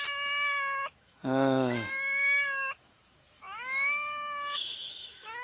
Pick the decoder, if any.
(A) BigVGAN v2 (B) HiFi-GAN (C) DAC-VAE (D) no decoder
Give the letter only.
C